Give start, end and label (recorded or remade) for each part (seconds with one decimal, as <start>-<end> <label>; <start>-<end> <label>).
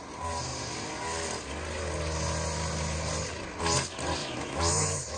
0.0-4.2 recorded; 4.2-5.2 remade